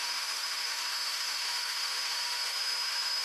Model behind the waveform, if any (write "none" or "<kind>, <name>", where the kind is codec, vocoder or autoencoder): autoencoder, DAC-VAE